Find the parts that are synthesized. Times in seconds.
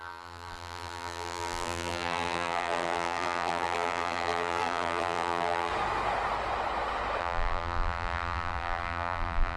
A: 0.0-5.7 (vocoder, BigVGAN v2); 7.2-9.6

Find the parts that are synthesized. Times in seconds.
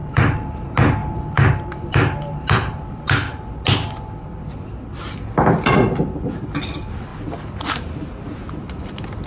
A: 0.0-0.6 (vocoder, BigVGAN v2); 1.0-3.5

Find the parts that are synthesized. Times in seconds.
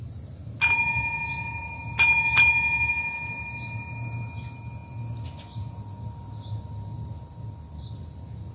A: none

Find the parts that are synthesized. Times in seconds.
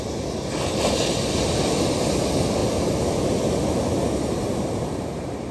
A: none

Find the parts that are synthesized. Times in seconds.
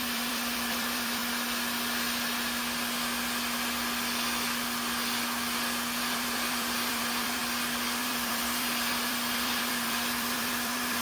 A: 0.0-1.2 (vocoder, BigVGAN v2); 6.0-7.4; 8.0-11.0